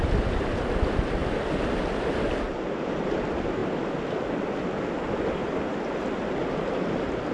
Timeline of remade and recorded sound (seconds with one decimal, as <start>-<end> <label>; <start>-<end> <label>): 0.0-7.3 recorded